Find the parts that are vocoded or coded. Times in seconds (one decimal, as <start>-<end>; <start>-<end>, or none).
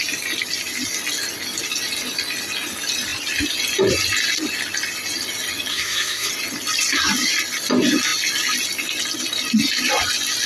5.7-6.3